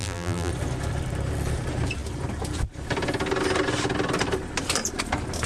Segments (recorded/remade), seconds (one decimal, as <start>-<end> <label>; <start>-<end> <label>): 0.0-0.5 remade; 0.5-5.5 recorded